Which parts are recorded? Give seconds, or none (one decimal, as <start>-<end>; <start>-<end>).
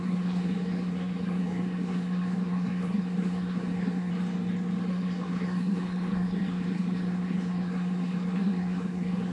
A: 4.1-4.9